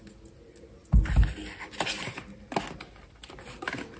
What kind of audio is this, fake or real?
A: real